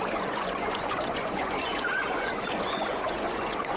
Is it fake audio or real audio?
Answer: fake